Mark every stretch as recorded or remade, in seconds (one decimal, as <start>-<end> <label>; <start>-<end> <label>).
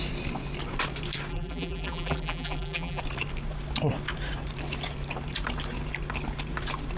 0.0-1.3 recorded; 1.3-3.0 remade; 3.0-7.0 recorded